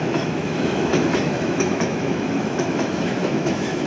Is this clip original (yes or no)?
no